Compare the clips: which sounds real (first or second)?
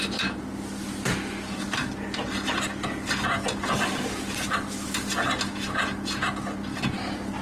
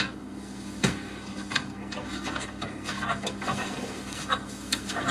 first